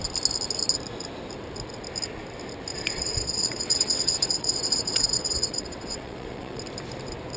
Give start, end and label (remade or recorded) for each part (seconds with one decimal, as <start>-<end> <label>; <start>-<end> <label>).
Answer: 0.0-2.7 recorded; 2.7-6.6 remade; 6.6-7.4 recorded

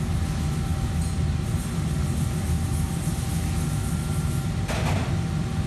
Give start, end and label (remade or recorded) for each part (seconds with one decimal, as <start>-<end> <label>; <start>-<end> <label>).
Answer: 0.0-5.7 recorded